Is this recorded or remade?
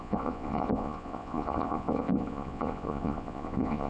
remade